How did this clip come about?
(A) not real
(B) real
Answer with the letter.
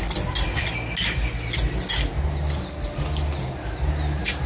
B